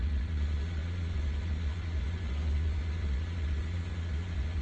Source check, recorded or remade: remade